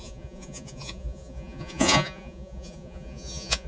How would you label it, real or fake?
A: fake